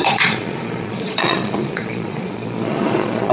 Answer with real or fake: fake